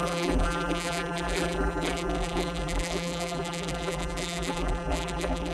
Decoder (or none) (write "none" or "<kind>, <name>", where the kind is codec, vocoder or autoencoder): vocoder, BigVGAN v2